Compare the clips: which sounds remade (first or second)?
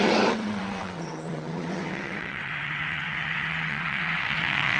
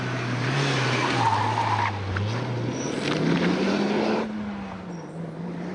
first